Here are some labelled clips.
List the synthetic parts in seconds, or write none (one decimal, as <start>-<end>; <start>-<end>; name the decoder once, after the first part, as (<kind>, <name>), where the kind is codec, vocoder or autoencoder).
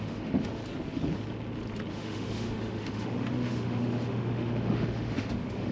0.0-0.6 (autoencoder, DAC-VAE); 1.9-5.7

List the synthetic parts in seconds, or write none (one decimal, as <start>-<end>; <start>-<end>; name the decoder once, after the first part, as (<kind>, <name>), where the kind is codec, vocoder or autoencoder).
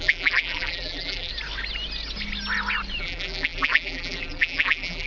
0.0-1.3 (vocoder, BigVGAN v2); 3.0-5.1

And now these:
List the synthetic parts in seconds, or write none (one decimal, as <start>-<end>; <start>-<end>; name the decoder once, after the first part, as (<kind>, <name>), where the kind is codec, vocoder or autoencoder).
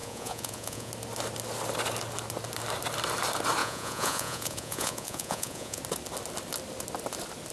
0.0-0.9 (vocoder, Vocos); 3.6-5.8